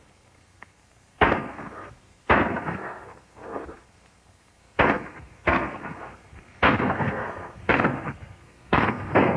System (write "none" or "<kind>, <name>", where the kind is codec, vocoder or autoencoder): codec, SNAC